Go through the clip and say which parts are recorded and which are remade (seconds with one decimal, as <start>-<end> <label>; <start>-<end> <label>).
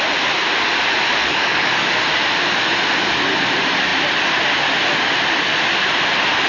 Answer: 0.0-1.2 recorded; 1.2-1.9 remade; 1.9-6.5 recorded